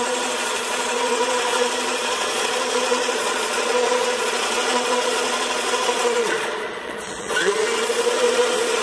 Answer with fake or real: fake